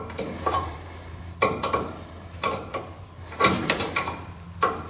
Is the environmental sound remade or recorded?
remade